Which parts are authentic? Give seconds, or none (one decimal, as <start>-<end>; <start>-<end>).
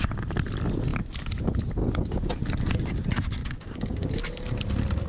0.0-1.8; 2.3-3.4; 4.2-5.1